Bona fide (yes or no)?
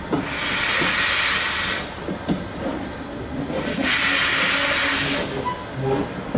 yes